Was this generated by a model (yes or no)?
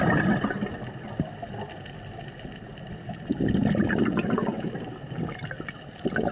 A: no